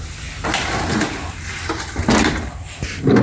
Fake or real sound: real